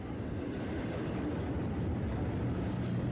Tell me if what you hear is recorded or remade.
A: recorded